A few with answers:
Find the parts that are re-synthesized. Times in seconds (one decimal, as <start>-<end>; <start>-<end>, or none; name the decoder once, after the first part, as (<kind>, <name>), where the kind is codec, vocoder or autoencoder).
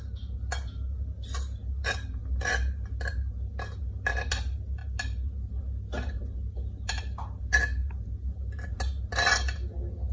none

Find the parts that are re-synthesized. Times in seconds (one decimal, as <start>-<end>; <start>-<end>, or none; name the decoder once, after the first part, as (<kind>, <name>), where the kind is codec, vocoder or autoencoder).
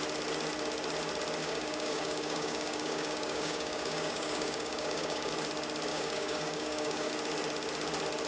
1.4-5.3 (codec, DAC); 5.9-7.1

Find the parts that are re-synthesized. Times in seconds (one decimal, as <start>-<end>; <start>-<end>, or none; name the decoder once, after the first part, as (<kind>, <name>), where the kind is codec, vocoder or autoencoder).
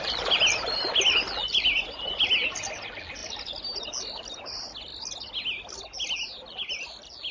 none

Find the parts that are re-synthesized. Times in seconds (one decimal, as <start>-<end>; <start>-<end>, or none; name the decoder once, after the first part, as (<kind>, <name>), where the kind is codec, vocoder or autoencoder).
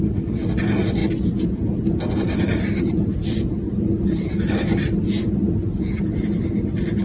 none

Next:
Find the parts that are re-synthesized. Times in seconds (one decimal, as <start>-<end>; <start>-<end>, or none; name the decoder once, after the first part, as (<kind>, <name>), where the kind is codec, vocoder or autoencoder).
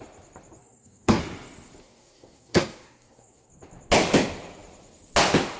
0.6-1.2 (codec, SNAC); 1.8-3.5